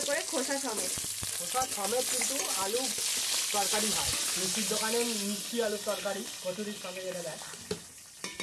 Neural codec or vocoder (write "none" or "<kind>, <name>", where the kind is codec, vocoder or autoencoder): none